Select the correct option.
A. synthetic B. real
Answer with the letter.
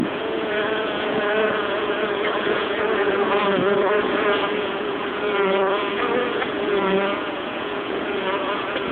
A